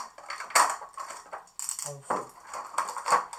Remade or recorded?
recorded